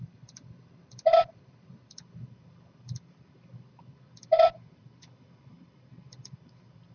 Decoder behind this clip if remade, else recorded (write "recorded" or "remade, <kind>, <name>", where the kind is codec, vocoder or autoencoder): remade, vocoder, BigVGAN v2